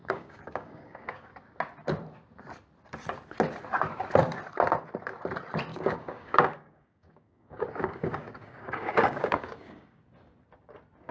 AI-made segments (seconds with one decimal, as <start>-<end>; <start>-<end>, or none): 0.0-1.3; 5.7-10.0